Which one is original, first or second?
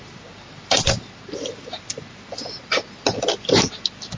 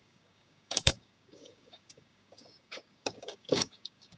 first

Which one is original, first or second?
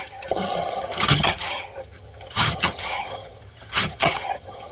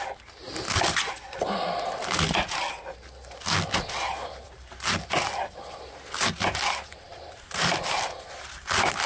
second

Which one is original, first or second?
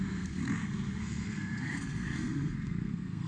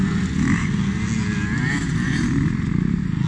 second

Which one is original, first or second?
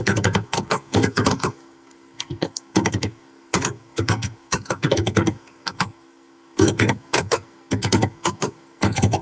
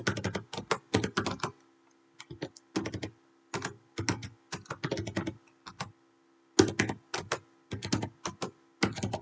second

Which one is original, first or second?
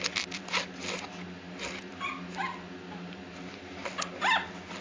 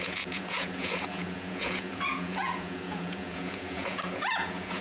first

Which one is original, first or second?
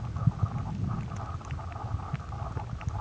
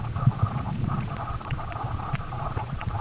first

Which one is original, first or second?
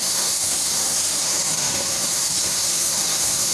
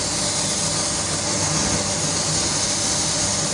second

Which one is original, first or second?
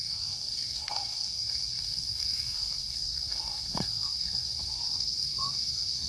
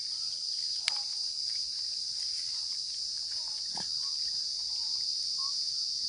second